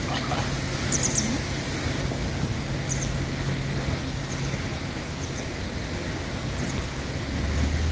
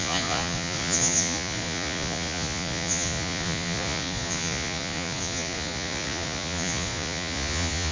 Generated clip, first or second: second